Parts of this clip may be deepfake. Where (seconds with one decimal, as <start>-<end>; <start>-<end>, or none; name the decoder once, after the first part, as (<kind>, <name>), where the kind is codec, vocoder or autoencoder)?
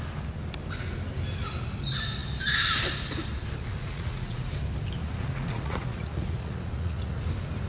3.8-4.5 (vocoder, Vocos); 5.0-7.2